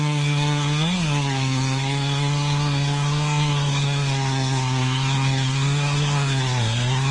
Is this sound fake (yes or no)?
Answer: yes